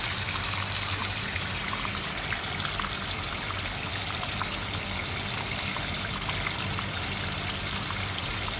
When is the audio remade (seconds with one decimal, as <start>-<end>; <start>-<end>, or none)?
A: 1.0-2.1